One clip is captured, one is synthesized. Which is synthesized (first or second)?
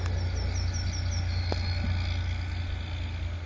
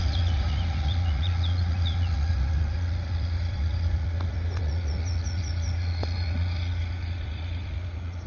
second